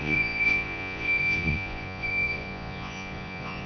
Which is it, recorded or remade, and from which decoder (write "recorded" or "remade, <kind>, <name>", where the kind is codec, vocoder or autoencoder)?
remade, vocoder, Vocos